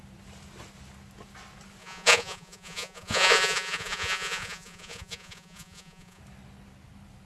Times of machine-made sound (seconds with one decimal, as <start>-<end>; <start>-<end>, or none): 1.8-6.2

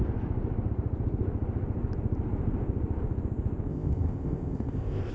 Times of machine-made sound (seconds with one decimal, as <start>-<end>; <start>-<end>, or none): 3.7-5.1

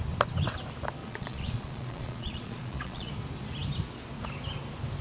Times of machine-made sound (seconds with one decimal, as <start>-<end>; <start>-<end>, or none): 1.0-3.1

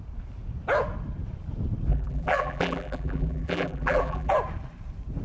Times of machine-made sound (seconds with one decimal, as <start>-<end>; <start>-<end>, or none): 1.9-4.3

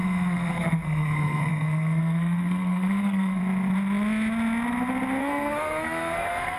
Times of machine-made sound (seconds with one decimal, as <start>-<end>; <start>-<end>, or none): 0.0-3.4; 5.2-6.6